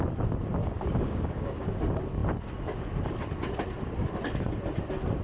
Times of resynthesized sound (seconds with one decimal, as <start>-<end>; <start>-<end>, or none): 0.6-1.8